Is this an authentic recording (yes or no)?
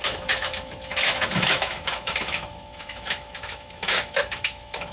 no